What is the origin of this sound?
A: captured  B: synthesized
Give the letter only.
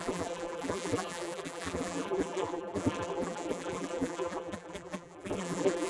B